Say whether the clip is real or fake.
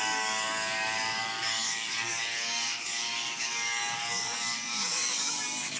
fake